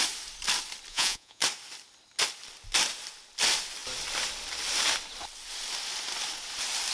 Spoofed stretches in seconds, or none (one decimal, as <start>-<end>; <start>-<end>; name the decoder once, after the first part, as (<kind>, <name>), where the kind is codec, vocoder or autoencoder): 0.9-1.4 (vocoder, Vocos)